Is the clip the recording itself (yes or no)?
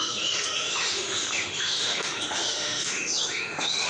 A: no